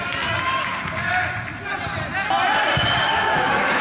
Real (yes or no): yes